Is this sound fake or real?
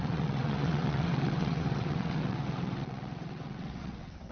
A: fake